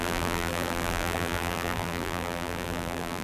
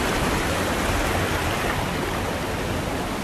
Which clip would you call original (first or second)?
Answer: second